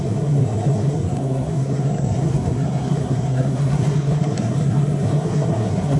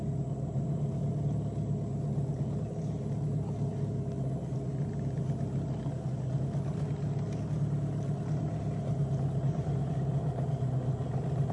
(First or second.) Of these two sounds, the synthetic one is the first